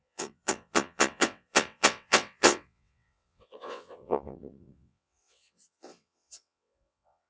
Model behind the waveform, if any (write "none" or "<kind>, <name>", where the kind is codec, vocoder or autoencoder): vocoder, WaveNeXt